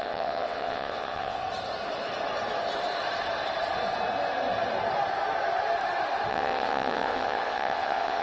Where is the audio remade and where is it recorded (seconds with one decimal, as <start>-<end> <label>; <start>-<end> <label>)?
0.0-1.4 remade; 1.4-6.3 recorded; 6.3-8.2 remade